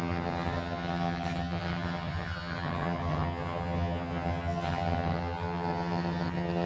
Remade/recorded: remade